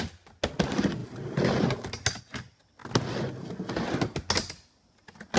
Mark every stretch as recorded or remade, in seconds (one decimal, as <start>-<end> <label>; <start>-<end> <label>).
0.0-5.4 recorded